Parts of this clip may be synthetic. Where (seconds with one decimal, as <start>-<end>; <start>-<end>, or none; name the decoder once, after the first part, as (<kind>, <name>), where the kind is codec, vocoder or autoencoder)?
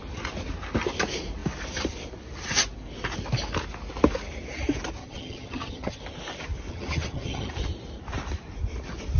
5.0-6.0 (vocoder, HiFi-GAN); 6.7-7.5